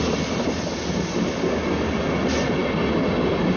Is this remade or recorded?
recorded